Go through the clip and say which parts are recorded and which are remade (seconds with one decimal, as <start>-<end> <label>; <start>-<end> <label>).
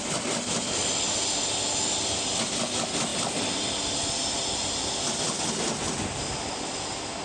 0.0-7.2 recorded